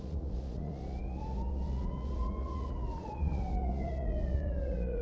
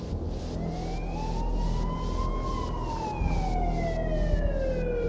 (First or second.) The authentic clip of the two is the second